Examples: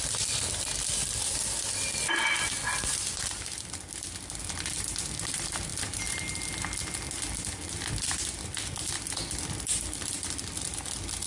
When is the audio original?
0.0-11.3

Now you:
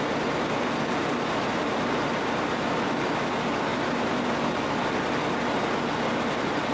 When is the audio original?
0.0-1.0; 3.1-3.7; 5.2-6.7

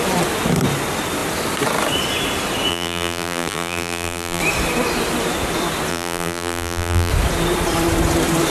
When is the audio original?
0.0-2.7; 4.4-5.9; 7.1-8.5